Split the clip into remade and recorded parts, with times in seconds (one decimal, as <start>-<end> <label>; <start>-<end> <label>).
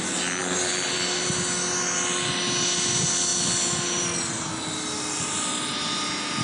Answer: 0.0-6.4 recorded